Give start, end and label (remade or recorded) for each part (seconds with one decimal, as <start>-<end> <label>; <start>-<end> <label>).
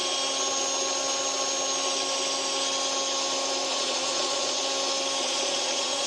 0.0-3.7 recorded; 3.7-4.6 remade; 4.6-5.2 recorded; 5.2-6.1 remade